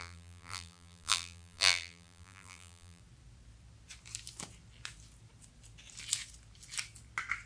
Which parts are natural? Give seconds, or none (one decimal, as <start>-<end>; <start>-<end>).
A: 3.0-7.5

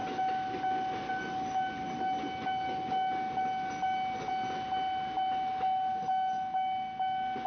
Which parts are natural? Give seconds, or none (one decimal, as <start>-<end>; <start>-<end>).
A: 0.0-7.5

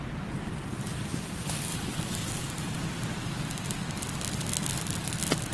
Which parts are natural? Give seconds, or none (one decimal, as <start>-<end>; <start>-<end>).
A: 0.0-5.5